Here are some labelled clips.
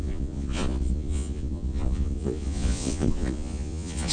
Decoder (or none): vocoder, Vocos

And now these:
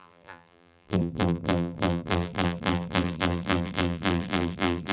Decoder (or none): vocoder, BigVGAN v2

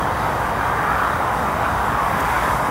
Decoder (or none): codec, DAC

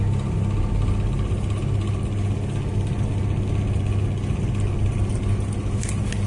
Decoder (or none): none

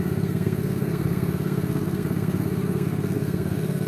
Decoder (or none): codec, SNAC